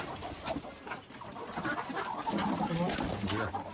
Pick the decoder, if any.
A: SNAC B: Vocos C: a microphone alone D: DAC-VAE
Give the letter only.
C